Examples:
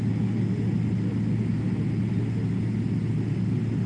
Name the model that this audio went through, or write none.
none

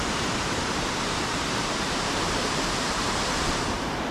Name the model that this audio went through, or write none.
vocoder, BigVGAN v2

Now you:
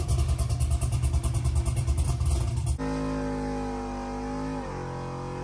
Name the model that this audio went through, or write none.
none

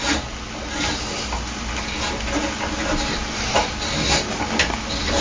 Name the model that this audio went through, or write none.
none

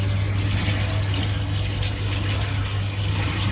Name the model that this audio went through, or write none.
none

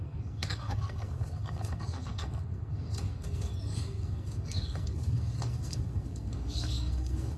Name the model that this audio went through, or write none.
codec, SNAC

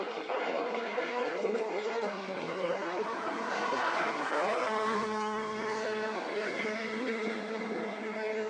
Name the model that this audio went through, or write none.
codec, SNAC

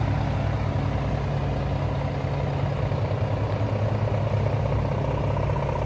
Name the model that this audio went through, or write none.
none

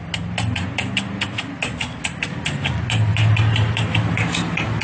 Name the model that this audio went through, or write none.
none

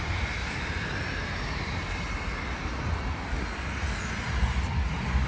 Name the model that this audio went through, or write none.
none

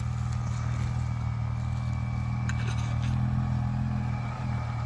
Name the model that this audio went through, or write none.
none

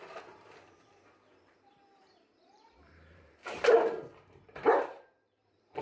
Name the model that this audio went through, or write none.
vocoder, BigVGAN v2